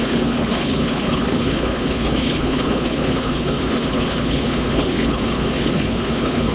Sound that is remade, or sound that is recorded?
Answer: remade